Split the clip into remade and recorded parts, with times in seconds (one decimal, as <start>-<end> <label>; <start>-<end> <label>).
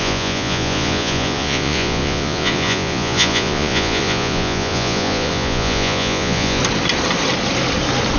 0.0-6.6 remade; 6.6-8.2 recorded